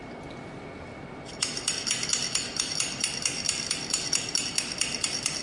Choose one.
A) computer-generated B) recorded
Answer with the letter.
B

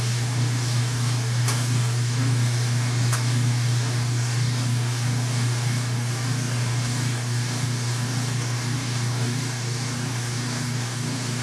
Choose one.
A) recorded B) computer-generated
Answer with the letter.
B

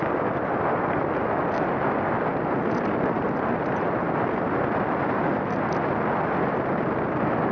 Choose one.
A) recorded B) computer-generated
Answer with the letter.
A